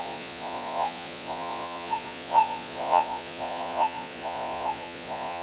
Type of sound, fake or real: fake